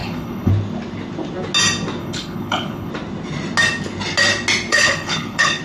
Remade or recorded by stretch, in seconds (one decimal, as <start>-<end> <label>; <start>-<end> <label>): 0.0-0.5 remade; 0.5-2.0 recorded; 2.0-2.9 remade; 2.9-4.7 recorded; 4.7-5.6 remade